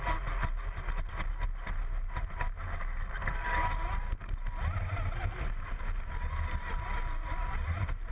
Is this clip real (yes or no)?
yes